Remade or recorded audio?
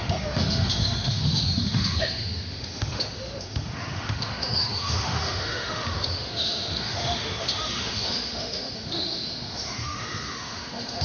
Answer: remade